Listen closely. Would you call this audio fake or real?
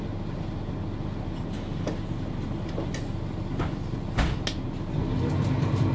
real